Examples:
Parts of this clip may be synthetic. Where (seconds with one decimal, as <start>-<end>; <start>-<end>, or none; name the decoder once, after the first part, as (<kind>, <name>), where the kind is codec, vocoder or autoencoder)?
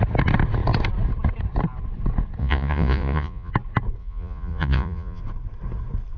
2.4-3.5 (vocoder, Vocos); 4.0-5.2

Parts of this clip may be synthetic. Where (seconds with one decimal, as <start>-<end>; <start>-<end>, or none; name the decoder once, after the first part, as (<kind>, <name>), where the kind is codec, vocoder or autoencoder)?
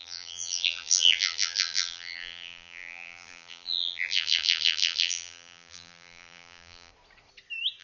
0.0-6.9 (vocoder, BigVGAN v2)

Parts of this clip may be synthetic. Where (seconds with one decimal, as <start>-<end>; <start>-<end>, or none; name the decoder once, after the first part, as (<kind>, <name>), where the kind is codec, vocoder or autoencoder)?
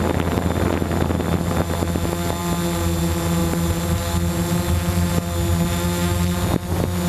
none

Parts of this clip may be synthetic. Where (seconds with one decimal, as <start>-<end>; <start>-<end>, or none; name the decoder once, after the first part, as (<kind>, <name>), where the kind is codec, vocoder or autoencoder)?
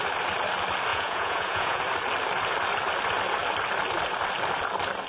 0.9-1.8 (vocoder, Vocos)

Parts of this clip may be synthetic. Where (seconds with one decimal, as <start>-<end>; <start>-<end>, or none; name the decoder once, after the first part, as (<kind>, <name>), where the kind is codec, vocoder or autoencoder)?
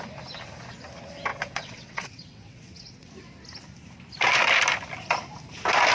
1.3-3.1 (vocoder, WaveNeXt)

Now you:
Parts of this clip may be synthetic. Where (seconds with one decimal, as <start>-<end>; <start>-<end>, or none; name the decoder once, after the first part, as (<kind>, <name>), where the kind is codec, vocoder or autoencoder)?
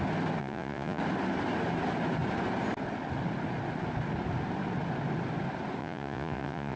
0.4-1.0 (vocoder, Vocos); 5.8-6.8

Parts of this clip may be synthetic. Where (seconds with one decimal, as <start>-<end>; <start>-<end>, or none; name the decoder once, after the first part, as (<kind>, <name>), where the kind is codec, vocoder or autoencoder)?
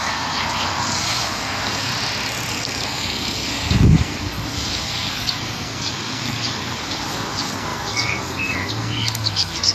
0.0-1.9 (codec, SNAC); 2.5-9.7